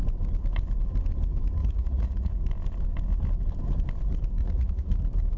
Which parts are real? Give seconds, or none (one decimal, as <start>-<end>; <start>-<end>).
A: 0.0-1.6; 2.3-4.4; 4.9-5.4